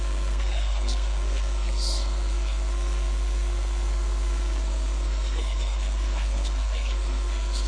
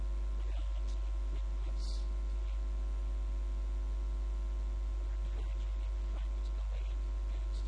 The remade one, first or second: first